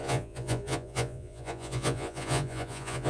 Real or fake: fake